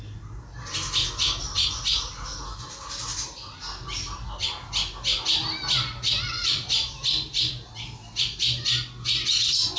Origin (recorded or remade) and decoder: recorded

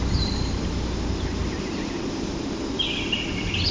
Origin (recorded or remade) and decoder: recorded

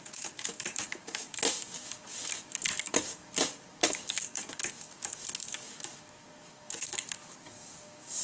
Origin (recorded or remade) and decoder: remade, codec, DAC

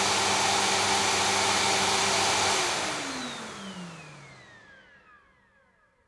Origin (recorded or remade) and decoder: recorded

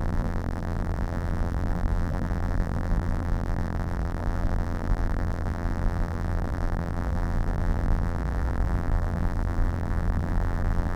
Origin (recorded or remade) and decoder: remade, vocoder, BigVGAN v2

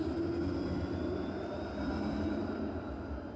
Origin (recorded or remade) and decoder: recorded